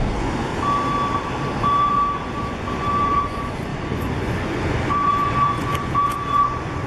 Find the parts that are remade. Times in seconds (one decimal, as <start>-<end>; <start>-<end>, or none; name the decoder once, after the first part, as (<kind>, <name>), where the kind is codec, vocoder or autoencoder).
0.0-0.5 (vocoder, Vocos); 1.6-6.9